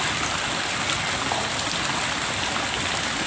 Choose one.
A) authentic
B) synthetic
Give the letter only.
A